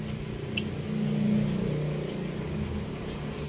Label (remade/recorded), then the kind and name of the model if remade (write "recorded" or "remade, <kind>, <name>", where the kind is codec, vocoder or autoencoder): recorded